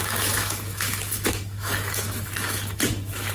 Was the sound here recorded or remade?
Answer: remade